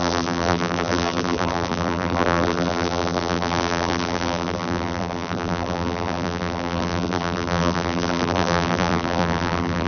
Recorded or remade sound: remade